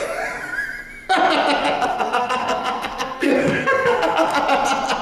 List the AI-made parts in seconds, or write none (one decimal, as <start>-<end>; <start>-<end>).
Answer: 1.6-4.4